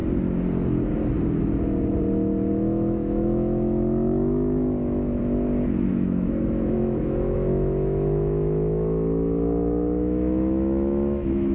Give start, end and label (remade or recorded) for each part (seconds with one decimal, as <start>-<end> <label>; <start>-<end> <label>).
0.0-2.5 recorded; 2.5-5.2 remade; 5.2-5.9 recorded; 5.9-11.5 remade